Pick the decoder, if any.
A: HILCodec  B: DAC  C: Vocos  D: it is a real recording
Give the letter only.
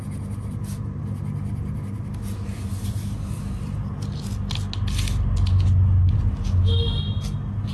D